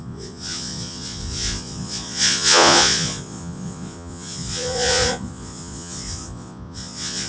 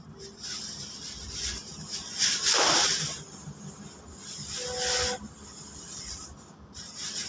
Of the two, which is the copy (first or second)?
first